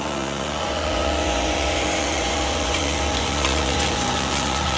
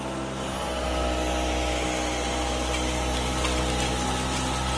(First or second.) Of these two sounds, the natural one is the second